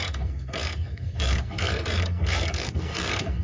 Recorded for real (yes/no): no